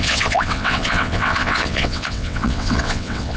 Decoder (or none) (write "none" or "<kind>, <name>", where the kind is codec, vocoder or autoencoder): vocoder, WaveNeXt